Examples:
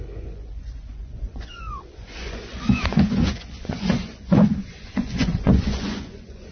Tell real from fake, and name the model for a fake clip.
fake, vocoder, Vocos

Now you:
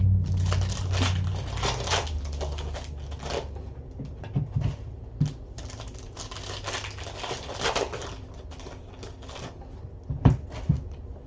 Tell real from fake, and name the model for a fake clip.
real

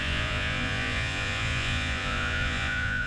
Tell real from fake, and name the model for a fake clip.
fake, vocoder, Vocos